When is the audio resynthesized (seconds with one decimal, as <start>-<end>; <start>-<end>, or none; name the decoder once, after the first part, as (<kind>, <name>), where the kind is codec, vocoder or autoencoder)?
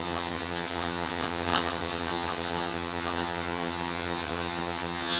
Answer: 0.0-5.2 (vocoder, HiFi-GAN)